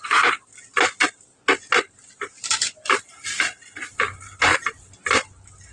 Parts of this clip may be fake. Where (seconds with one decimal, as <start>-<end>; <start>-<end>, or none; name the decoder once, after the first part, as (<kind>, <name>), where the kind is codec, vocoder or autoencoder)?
4.5-5.1 (vocoder, BigVGAN v2)